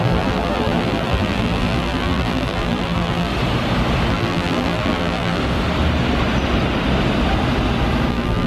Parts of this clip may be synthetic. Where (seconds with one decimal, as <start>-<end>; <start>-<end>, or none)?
0.0-3.3; 4.1-5.4; 8.1-8.5